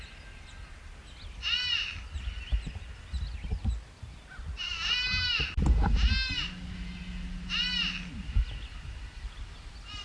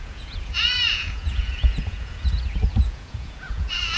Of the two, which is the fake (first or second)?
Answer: second